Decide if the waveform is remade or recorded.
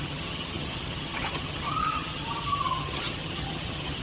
remade